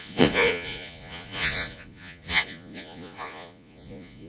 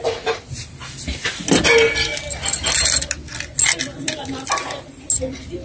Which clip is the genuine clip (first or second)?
second